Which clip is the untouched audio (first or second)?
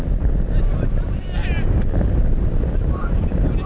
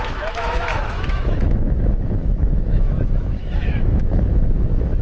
first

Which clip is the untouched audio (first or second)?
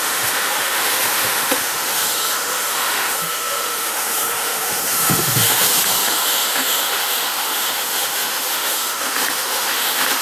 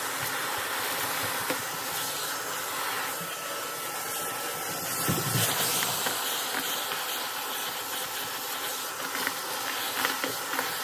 second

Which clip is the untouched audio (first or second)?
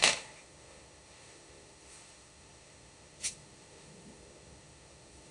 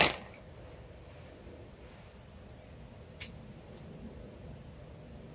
second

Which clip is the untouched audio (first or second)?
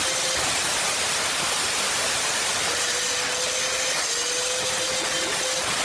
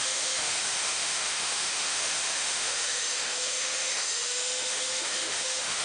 first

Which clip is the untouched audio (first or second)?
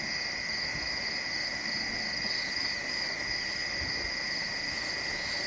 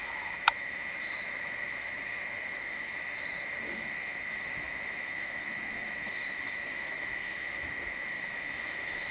first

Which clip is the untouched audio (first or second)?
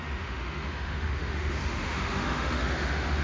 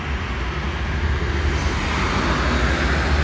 second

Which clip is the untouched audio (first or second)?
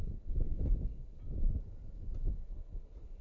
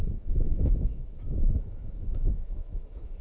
first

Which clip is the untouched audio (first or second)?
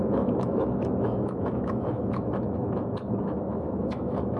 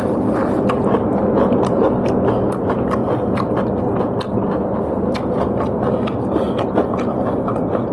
second